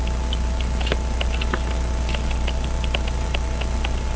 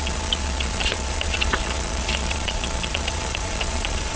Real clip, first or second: first